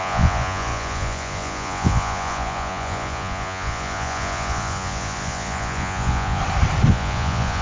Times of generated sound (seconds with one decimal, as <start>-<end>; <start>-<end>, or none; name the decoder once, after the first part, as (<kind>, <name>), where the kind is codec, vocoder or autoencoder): 0.0-6.4 (vocoder, Vocos); 6.9-7.6